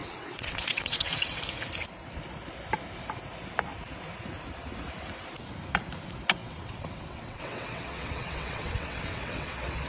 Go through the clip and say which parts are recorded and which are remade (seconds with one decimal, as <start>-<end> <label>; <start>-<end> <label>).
0.0-1.4 remade; 1.4-6.4 recorded; 6.4-9.9 remade